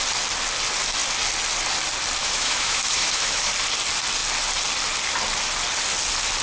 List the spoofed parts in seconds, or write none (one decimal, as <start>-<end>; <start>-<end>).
2.2-3.5